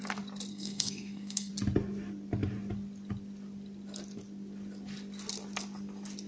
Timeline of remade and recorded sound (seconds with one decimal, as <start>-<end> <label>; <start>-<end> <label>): 0.0-0.5 recorded; 0.5-1.5 remade; 1.5-6.3 recorded

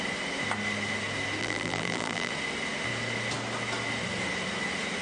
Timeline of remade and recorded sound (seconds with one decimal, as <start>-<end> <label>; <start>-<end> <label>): 0.0-1.4 recorded; 1.4-2.3 remade; 2.3-5.0 recorded

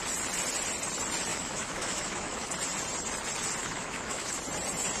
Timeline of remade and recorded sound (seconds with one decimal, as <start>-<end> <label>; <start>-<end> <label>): 0.0-1.3 recorded; 1.3-2.5 remade; 2.5-3.6 recorded; 3.6-4.3 remade; 4.3-5.0 recorded

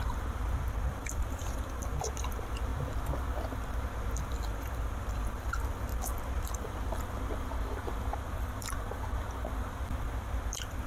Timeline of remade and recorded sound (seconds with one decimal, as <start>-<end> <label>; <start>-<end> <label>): 0.0-2.7 remade; 2.7-4.2 recorded; 4.2-10.9 remade

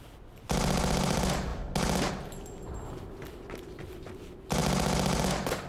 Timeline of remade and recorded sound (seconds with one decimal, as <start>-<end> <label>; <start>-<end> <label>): 0.0-5.7 recorded

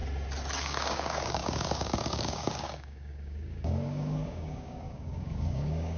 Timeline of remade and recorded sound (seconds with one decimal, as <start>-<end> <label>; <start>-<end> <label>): 0.0-0.6 recorded; 0.6-6.0 remade

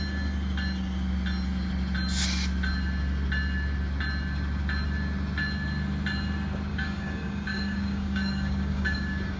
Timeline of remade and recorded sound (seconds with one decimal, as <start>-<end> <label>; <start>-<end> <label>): 0.0-6.7 recorded; 6.7-9.4 remade